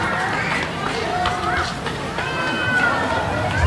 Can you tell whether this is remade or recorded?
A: recorded